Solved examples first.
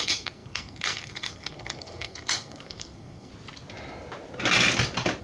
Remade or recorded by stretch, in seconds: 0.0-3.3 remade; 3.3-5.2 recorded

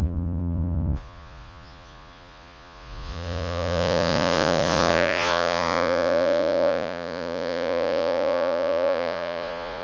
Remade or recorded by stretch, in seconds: 0.0-9.8 remade

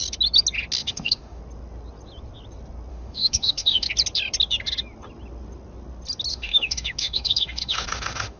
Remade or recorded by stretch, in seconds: 0.0-0.8 recorded; 0.8-1.4 remade; 1.4-2.9 recorded; 2.9-3.9 remade; 3.9-6.3 recorded; 6.3-8.4 remade

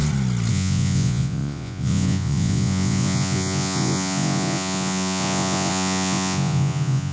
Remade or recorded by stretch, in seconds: 0.0-0.5 recorded; 0.5-7.1 remade

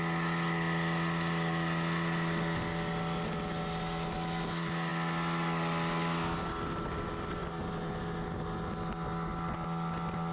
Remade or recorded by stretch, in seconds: 0.0-10.3 recorded

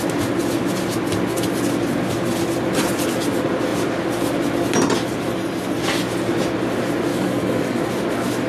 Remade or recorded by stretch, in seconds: 0.0-7.1 recorded; 7.1-7.8 remade; 7.8-8.5 recorded